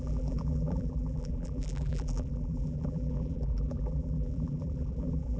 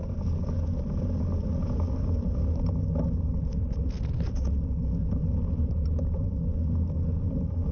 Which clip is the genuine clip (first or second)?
second